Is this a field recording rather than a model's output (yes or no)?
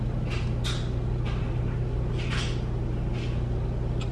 yes